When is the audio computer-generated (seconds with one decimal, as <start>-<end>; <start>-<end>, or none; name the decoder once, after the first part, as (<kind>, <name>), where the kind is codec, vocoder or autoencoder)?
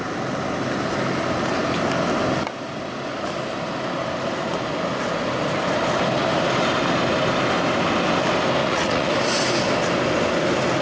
8.6-9.1 (vocoder, Vocos)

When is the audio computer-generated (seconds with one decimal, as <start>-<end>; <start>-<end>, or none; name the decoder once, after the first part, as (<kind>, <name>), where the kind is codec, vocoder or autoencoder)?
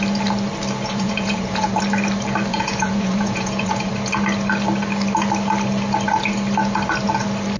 0.9-1.8 (vocoder, Vocos); 2.5-3.9